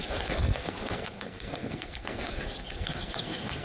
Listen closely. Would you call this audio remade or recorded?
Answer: remade